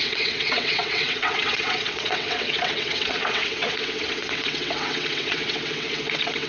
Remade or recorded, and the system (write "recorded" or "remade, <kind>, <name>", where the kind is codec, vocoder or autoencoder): remade, vocoder, WaveNeXt